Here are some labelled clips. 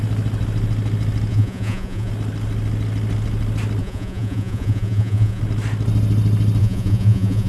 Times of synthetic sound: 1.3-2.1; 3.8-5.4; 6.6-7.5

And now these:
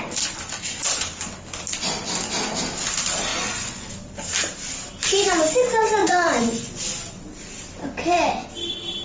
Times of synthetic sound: 3.3-3.9; 6.0-6.8

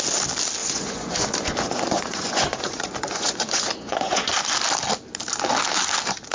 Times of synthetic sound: 0.6-4.3

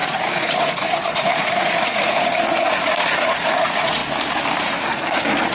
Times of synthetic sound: 0.0-4.0; 4.6-5.5

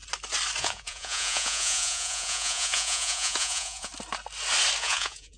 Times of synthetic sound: 0.6-3.9; 4.8-5.4

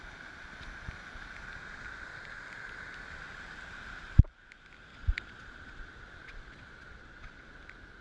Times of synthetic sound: 4.9-7.5